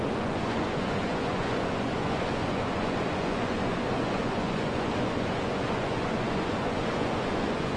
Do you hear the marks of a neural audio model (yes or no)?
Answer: yes